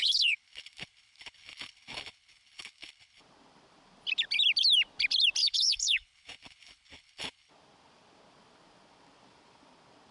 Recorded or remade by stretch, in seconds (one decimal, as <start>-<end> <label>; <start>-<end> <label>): 0.0-3.2 remade; 3.2-5.4 recorded; 5.4-7.5 remade; 7.5-10.1 recorded